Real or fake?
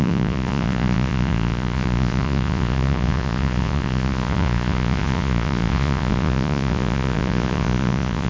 fake